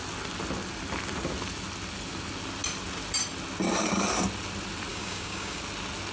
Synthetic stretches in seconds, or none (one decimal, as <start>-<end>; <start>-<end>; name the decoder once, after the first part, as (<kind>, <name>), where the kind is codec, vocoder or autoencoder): 4.9-5.6 (codec, DAC)